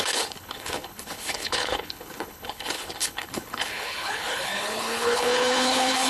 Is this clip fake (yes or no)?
yes